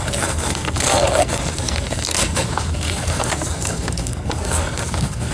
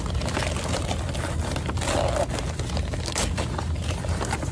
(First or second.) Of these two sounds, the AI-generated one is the first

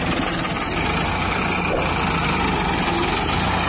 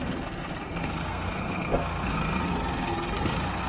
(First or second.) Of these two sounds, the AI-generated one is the second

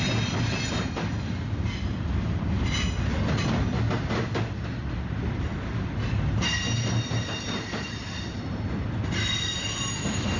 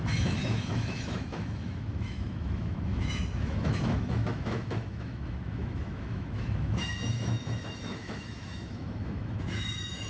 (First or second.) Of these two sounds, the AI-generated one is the second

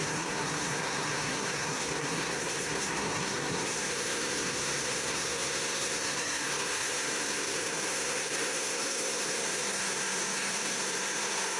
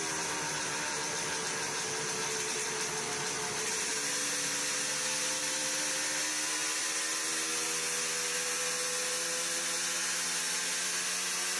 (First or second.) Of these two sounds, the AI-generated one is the first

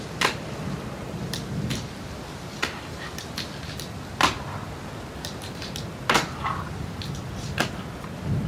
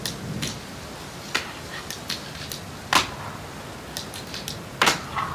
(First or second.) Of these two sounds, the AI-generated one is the first